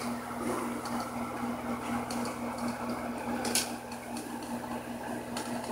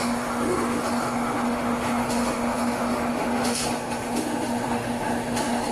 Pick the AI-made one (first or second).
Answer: second